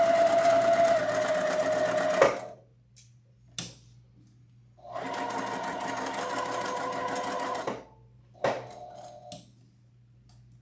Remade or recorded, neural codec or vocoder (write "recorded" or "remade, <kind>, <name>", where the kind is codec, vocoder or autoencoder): recorded